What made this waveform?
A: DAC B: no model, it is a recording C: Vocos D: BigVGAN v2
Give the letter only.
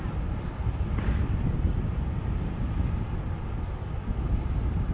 B